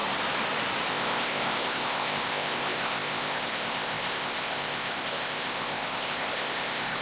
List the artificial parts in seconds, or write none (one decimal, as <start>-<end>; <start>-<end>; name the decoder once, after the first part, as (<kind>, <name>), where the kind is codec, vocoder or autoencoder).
0.9-7.0 (codec, ZipCodec)